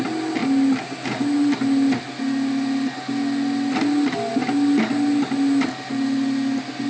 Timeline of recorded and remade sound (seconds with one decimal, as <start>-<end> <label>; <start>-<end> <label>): 0.0-6.9 recorded